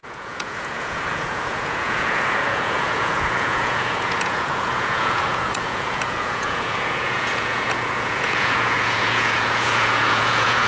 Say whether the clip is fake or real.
fake